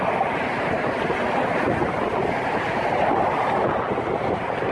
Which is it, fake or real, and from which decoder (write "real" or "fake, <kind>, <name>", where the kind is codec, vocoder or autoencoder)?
real